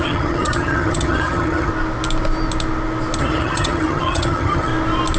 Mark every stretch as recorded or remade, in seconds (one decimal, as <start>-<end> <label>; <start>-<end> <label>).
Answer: 0.0-1.7 remade; 1.7-3.2 recorded; 3.2-4.7 remade; 4.7-5.2 recorded